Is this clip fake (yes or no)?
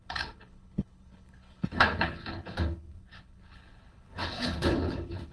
yes